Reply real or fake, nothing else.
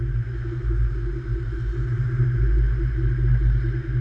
real